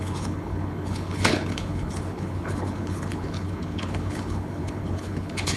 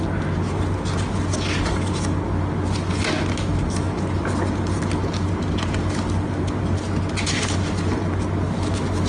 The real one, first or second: second